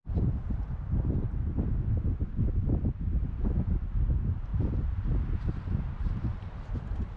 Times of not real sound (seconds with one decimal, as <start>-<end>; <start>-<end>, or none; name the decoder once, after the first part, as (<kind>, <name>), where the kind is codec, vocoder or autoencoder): 4.5-6.5 (vocoder, BigVGAN v2)